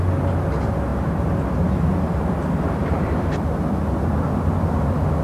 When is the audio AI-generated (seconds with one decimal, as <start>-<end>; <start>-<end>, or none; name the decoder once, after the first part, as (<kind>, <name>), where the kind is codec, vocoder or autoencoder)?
0.9-1.7 (vocoder, BigVGAN v2); 2.8-3.3